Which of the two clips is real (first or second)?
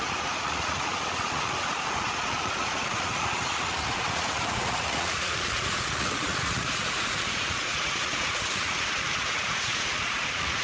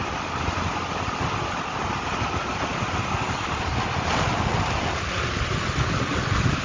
second